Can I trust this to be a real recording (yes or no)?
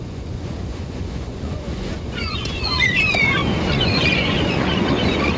no